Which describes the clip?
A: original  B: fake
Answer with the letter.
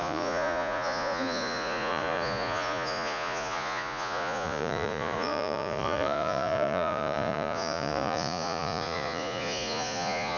B